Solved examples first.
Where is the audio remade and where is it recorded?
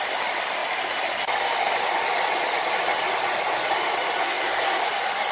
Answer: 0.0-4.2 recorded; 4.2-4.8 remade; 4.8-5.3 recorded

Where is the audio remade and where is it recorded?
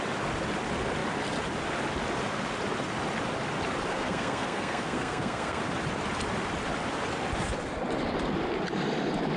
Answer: 0.0-3.9 recorded; 3.9-5.6 remade; 5.6-9.4 recorded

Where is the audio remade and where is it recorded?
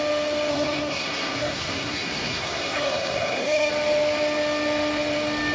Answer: 0.0-0.5 recorded; 0.5-3.7 remade; 3.7-5.5 recorded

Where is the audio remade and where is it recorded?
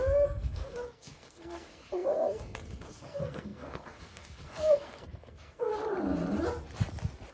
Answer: 0.0-5.7 remade; 5.7-7.3 recorded